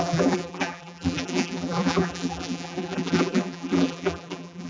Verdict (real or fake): fake